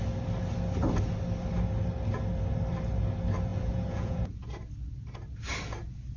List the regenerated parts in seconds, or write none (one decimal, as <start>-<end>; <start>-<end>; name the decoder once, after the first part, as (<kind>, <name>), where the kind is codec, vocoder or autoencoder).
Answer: 3.5-4.3 (vocoder, Vocos)